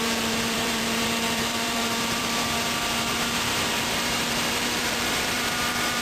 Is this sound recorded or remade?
remade